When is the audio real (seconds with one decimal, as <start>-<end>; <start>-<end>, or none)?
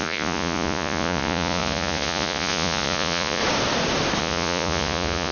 3.4-4.2